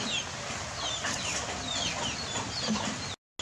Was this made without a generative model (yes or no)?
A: yes